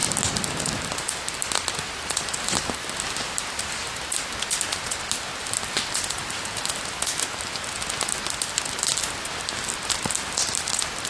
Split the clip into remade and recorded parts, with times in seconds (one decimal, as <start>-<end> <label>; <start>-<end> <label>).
0.0-11.1 recorded